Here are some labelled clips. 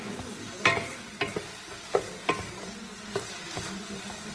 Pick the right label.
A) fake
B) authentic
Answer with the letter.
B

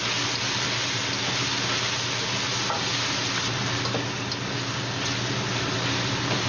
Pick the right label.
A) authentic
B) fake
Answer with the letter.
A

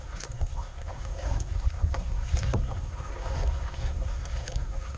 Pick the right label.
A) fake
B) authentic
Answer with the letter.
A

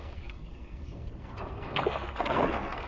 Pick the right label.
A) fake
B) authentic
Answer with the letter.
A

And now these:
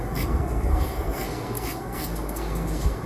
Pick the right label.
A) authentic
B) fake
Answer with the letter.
B